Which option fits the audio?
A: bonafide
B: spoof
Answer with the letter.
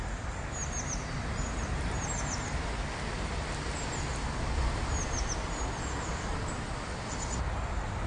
A